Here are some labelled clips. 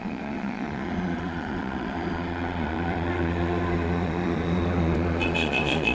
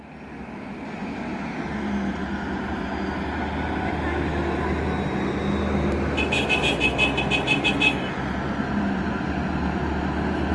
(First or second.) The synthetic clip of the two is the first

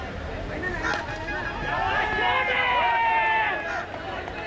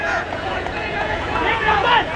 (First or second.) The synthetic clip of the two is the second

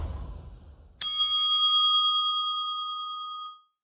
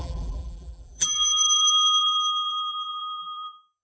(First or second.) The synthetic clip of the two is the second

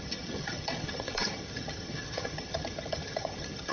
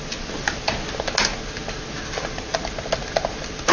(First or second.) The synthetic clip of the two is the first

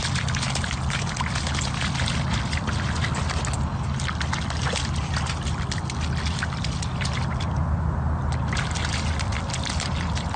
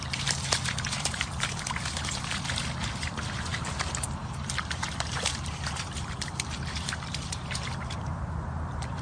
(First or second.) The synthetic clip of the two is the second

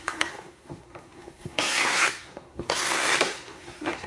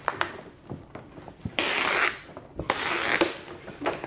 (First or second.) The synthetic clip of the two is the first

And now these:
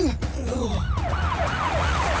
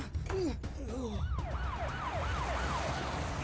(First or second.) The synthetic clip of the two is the first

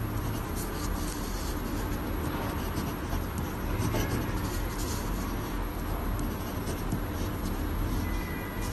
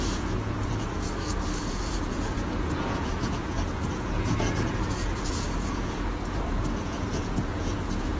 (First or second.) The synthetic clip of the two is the second